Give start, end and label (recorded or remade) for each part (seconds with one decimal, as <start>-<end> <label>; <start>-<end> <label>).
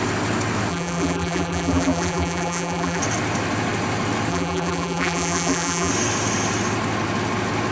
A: 0.0-0.7 recorded; 0.7-3.0 remade; 3.0-4.3 recorded; 4.3-5.9 remade; 5.9-7.7 recorded